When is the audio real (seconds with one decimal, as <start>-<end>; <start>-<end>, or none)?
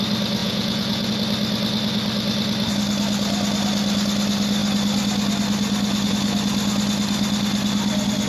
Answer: 0.0-0.4; 1.1-8.3